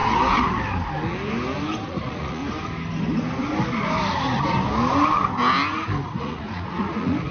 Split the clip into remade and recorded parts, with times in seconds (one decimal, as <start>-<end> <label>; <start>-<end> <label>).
0.0-1.9 recorded; 1.9-2.4 remade; 2.4-6.2 recorded; 6.2-7.3 remade